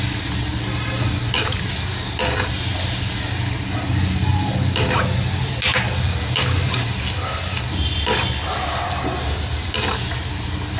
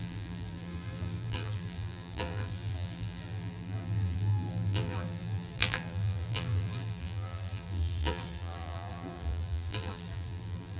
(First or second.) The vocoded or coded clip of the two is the second